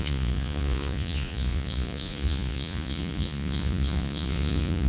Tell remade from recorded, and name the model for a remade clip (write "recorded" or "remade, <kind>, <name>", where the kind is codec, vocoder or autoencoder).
remade, vocoder, Vocos